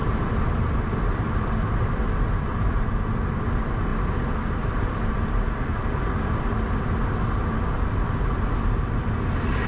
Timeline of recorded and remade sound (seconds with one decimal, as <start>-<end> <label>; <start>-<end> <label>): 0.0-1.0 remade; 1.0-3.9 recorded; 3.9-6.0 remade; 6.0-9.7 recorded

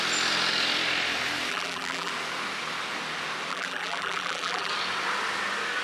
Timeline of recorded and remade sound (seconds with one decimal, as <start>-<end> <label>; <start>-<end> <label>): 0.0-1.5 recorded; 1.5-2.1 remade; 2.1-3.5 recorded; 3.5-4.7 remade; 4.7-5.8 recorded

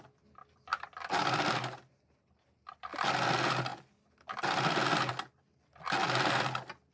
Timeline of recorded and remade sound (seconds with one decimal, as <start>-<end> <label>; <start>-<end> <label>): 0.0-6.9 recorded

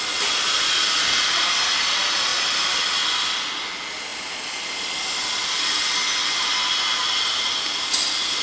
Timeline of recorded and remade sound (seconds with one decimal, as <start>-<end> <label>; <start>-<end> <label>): 0.0-8.4 recorded

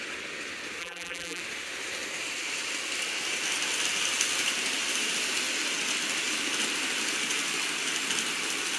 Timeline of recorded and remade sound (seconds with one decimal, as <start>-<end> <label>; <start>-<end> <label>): 0.0-0.8 recorded; 0.8-1.4 remade; 1.4-8.8 recorded

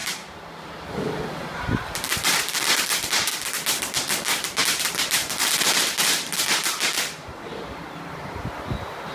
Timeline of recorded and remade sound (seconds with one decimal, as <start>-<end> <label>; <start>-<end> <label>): 0.0-1.6 recorded; 1.6-3.3 remade; 3.3-3.8 recorded; 3.8-9.1 remade

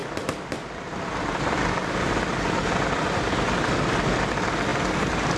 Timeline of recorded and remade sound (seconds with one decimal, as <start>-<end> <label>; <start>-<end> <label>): 0.0-3.2 remade; 3.2-5.4 recorded

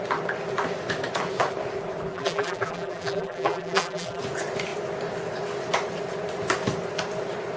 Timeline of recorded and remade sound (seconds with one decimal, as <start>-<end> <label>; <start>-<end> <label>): 0.0-2.1 recorded; 2.1-4.2 remade; 4.2-7.6 recorded